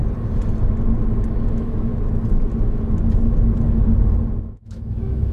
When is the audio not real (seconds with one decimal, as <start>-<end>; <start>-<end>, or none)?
1.5-1.9; 4.4-5.3